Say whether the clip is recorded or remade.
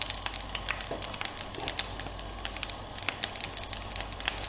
recorded